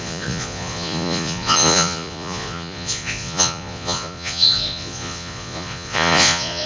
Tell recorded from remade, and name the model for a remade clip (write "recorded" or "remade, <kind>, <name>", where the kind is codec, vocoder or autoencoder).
remade, vocoder, Vocos